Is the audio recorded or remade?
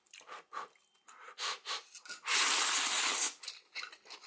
recorded